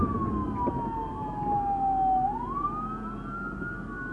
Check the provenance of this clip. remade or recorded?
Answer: recorded